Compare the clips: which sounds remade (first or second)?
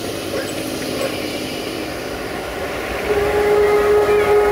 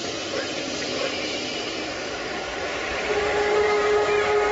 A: second